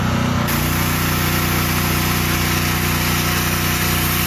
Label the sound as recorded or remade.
recorded